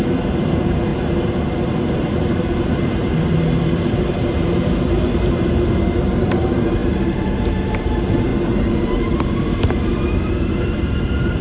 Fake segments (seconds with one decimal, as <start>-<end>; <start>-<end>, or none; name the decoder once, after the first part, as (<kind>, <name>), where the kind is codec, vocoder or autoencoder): 0.0-0.9 (vocoder, BigVGAN v2); 1.9-11.4